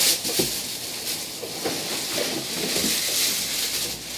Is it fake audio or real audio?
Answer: real